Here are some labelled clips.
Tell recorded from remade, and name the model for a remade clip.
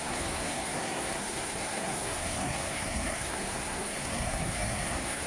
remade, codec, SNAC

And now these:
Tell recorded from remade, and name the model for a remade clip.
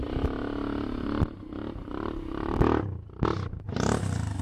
recorded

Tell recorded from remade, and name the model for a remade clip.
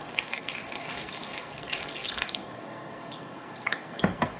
remade, codec, SNAC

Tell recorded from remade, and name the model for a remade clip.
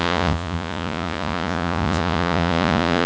remade, vocoder, Vocos